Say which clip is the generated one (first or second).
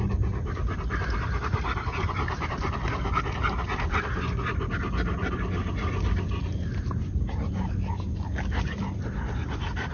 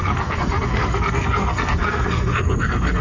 second